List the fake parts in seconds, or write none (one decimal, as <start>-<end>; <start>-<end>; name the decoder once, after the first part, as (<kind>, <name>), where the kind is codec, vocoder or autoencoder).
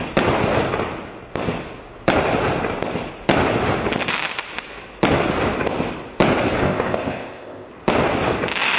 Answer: 6.6-7.7 (codec, ZipCodec)